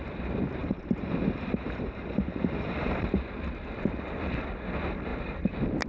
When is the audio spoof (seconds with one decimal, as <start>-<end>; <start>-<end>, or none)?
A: 0.6-3.1